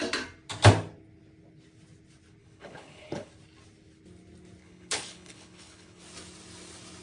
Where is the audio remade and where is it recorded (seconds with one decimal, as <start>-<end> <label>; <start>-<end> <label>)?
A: 0.0-2.4 recorded; 2.4-3.3 remade; 3.3-4.6 recorded; 4.6-6.0 remade; 6.0-7.0 recorded